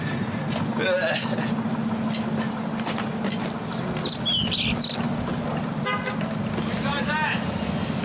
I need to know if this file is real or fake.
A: real